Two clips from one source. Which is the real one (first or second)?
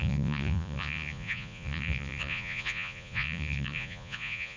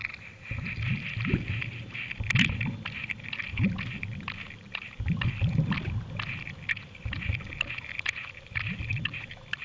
second